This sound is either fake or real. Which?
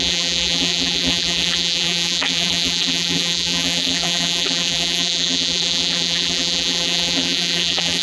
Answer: fake